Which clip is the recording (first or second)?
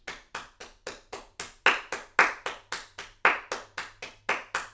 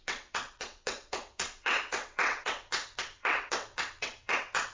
first